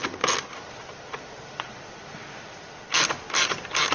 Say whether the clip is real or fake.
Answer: fake